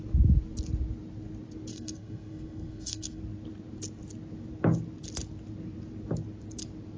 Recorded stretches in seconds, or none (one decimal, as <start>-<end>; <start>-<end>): 0.0-1.7; 3.2-7.0